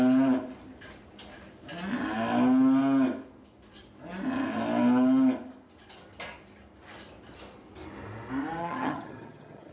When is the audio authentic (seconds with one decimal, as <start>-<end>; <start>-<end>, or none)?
0.0-8.6